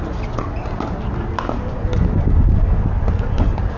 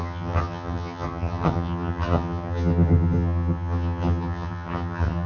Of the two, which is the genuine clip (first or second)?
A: first